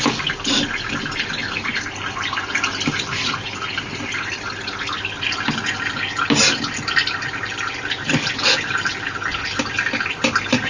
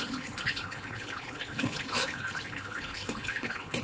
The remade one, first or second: second